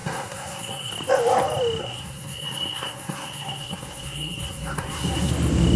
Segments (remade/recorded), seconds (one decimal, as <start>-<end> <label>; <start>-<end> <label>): 0.0-0.9 remade; 0.9-1.8 recorded; 1.8-5.3 remade; 5.3-5.8 recorded